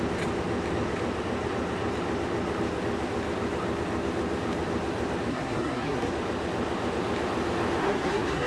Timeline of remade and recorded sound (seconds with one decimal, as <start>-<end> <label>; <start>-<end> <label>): 0.0-5.3 recorded; 5.3-6.1 remade; 6.1-7.8 recorded; 7.8-8.5 remade